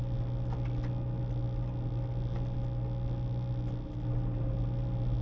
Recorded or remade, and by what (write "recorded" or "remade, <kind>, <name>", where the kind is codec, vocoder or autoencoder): recorded